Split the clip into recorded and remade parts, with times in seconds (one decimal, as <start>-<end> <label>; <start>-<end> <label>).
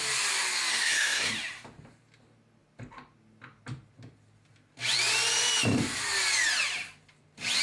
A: 0.0-0.7 recorded; 0.7-1.3 remade; 1.3-7.6 recorded